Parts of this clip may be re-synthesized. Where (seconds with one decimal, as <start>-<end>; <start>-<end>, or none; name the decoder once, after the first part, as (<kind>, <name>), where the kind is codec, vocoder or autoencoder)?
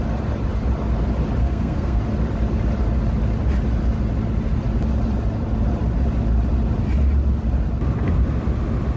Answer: 1.4-2.0 (codec, SNAC)